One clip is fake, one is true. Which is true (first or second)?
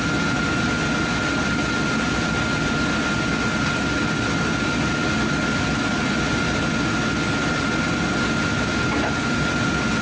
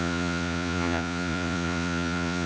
first